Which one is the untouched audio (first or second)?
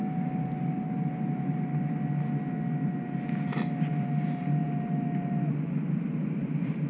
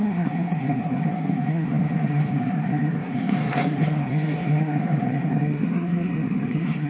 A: first